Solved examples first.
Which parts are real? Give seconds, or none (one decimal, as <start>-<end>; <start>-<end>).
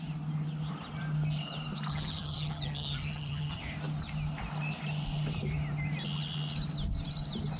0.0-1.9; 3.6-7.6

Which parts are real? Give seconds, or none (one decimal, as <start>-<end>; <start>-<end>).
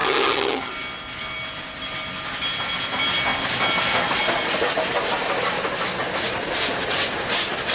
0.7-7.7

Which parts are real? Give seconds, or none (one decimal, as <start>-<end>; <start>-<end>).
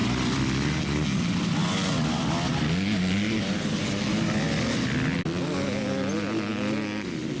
0.0-7.4